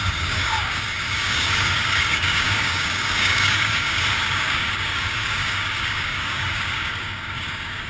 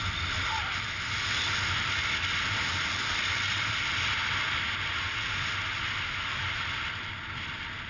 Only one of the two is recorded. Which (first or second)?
second